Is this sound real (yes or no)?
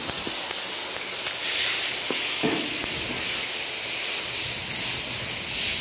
yes